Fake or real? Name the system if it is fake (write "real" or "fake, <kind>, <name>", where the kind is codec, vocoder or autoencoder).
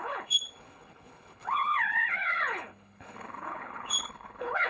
fake, codec, HILCodec